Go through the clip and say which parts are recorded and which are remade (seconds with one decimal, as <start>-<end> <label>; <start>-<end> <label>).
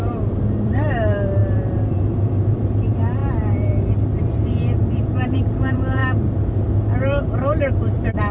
0.0-6.0 remade; 6.0-7.0 recorded; 7.0-8.3 remade